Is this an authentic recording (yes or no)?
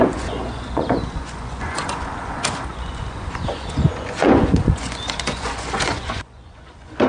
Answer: no